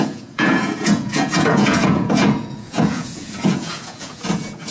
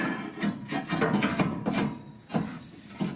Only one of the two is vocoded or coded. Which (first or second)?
first